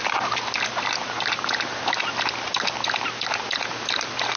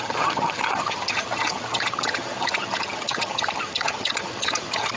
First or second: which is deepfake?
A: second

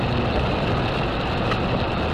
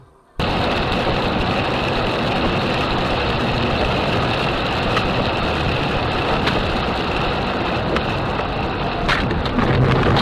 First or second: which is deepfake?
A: second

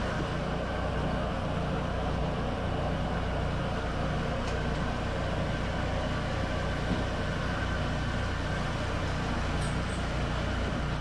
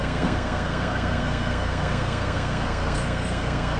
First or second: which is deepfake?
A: second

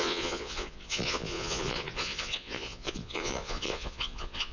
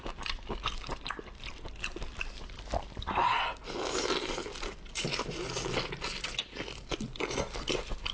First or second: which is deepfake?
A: first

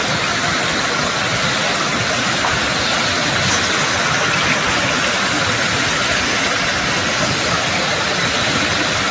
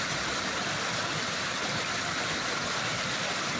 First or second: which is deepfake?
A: second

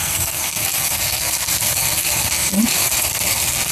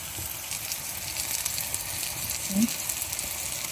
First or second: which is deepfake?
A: first